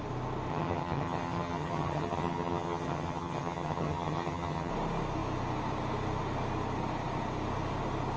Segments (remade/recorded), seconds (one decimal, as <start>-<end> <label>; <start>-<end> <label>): 0.0-0.5 recorded; 0.5-4.7 remade; 4.7-8.2 recorded